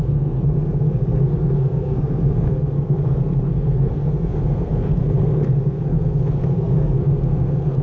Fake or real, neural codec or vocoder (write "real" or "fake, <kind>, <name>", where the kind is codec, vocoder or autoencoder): fake, codec, SNAC